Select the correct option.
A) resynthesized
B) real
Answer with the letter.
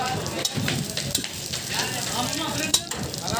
A